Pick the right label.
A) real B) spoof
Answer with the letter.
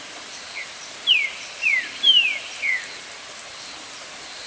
A